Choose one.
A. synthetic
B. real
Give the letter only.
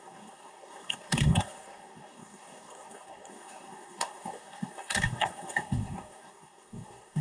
A